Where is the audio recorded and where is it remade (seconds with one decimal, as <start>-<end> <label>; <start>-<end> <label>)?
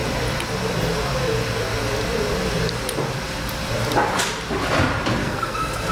0.0-5.2 recorded; 5.2-5.9 remade